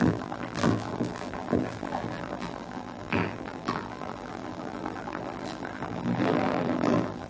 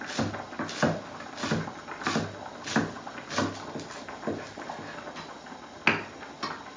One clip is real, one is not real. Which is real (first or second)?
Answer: second